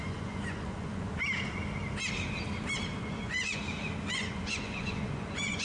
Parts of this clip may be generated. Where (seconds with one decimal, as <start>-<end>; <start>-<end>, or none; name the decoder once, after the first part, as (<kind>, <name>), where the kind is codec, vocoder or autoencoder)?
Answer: 0.0-1.1 (vocoder, Vocos); 3.0-3.6; 4.1-5.6